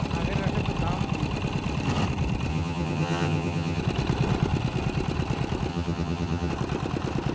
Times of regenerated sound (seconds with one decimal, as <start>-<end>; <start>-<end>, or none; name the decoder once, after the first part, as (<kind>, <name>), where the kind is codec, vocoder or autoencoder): 2.5-3.8 (vocoder, HiFi-GAN); 5.7-6.5